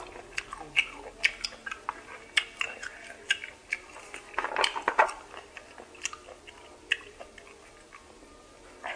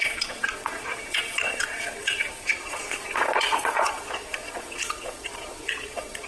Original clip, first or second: first